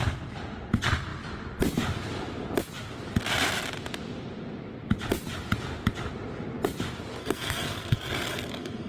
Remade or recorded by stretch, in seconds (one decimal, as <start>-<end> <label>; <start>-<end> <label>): 0.0-7.2 recorded; 7.2-8.9 remade